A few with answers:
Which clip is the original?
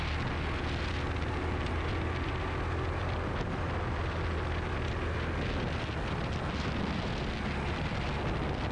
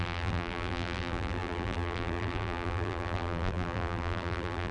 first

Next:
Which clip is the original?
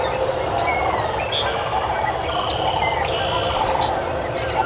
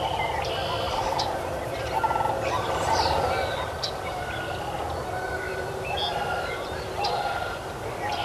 first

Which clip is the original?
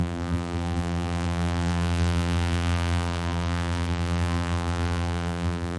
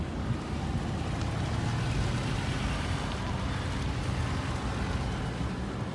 second